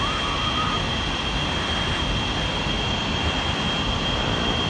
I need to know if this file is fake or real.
real